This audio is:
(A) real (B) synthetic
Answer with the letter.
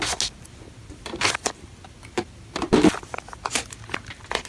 A